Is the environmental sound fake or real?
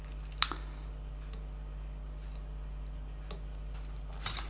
real